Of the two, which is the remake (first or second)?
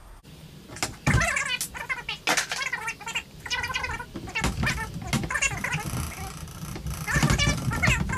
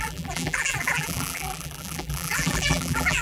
second